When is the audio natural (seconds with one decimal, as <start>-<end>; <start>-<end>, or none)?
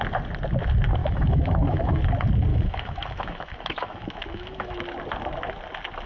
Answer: 0.0-1.0; 2.0-2.5; 4.8-6.1